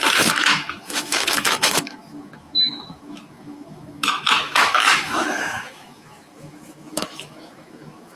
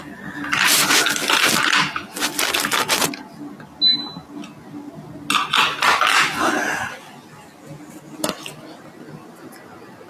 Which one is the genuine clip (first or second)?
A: second